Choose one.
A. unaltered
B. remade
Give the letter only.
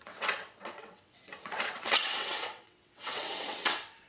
B